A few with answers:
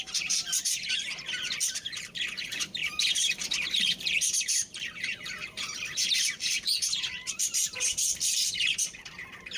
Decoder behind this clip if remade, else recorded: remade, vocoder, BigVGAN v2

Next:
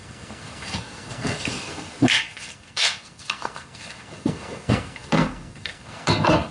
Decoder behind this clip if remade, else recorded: remade, codec, SNAC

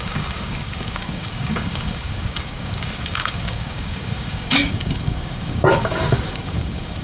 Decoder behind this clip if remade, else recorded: remade, codec, DAC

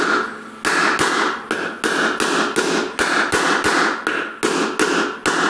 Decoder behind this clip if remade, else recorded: recorded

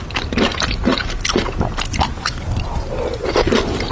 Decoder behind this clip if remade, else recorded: recorded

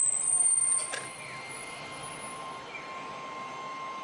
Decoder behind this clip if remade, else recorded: recorded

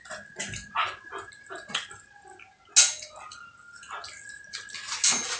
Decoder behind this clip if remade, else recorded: recorded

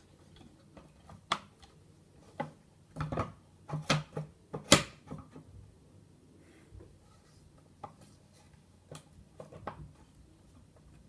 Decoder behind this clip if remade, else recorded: recorded